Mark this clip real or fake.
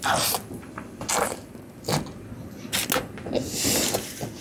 real